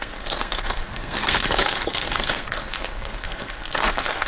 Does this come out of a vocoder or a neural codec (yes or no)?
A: yes